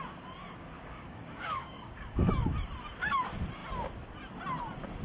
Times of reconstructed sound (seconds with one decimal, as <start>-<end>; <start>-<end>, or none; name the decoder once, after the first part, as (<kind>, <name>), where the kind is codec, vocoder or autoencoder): 0.4-2.3 (codec, DAC)